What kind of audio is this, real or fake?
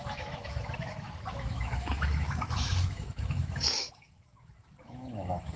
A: fake